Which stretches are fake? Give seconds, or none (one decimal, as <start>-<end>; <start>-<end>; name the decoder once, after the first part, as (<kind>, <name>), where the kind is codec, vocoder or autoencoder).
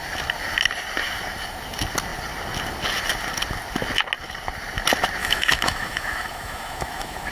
5.2-7.3 (autoencoder, DAC-VAE)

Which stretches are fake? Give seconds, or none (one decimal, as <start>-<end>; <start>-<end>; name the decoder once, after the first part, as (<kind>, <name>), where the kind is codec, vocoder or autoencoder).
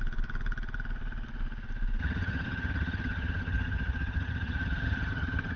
2.0-5.6 (vocoder, HiFi-GAN)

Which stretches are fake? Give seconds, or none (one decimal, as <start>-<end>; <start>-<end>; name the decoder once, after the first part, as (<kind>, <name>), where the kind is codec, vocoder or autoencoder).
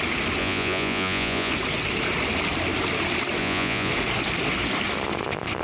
0.4-1.5 (vocoder, Vocos); 3.4-3.9